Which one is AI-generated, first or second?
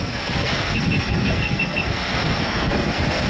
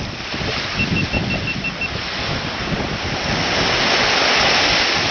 first